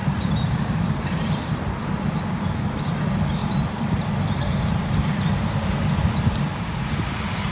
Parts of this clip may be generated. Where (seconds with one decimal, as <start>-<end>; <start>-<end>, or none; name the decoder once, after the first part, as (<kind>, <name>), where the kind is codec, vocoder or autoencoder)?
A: 0.0-1.5 (vocoder, BigVGAN v2); 3.4-7.5